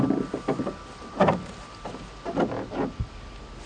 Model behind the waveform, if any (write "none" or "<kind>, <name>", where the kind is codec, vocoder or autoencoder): none